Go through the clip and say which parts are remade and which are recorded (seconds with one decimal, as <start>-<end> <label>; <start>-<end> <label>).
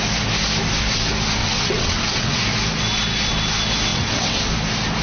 0.0-1.4 recorded; 1.4-2.4 remade; 2.4-3.9 recorded; 3.9-4.4 remade; 4.4-5.0 recorded